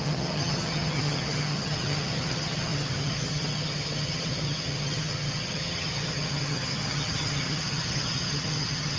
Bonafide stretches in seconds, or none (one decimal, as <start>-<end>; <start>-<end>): none